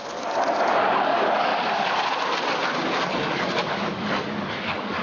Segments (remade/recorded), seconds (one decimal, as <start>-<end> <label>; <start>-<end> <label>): 0.0-1.5 remade; 1.5-3.1 recorded; 3.1-5.0 remade